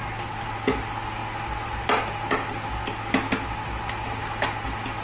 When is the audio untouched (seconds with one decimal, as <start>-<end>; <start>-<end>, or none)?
0.0-5.0